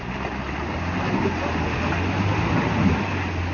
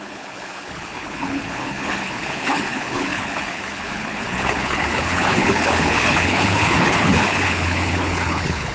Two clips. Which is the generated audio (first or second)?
second